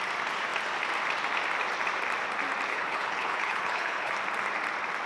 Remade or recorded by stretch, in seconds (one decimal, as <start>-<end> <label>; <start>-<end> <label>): 0.0-2.7 recorded; 2.7-4.1 remade; 4.1-5.1 recorded